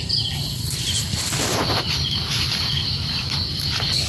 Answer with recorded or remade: recorded